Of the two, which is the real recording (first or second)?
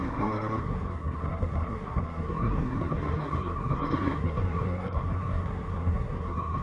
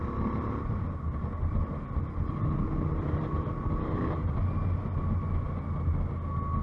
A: second